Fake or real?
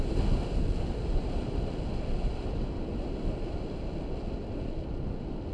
real